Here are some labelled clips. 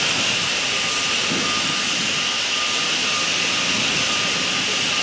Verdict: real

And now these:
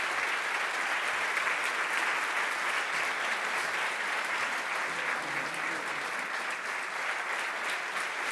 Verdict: real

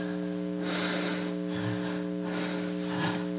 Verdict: real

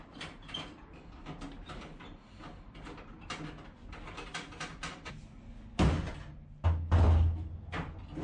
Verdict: real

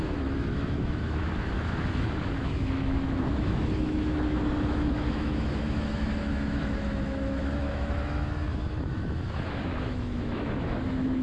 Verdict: fake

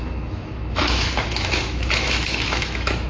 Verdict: fake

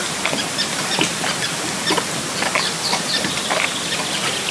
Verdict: real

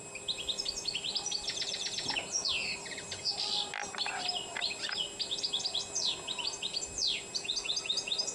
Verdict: real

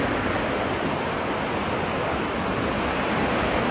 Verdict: real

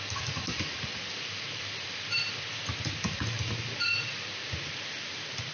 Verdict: fake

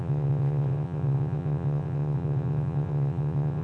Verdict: fake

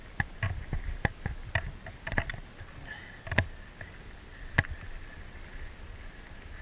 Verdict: real